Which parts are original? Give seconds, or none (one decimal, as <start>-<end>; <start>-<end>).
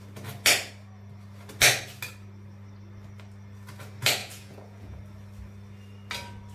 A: 0.0-4.2; 5.0-6.5